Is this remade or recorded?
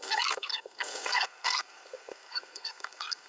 remade